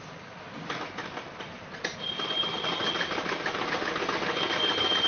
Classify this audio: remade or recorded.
recorded